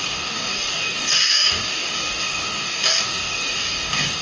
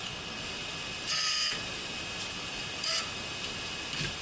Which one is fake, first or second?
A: first